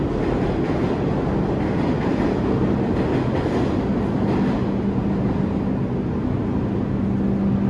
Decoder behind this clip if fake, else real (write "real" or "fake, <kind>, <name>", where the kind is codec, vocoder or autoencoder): real